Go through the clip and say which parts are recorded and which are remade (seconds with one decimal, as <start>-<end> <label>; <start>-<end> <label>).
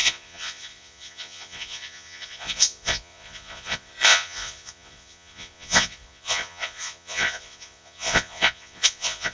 0.0-9.3 remade